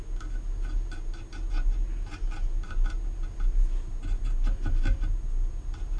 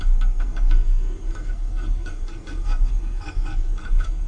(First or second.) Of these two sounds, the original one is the first